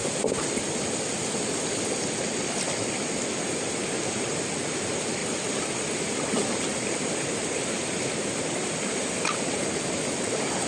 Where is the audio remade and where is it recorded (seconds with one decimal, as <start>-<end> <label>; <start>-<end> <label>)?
0.0-2.1 remade; 2.1-5.2 recorded; 5.2-9.6 remade; 9.6-10.7 recorded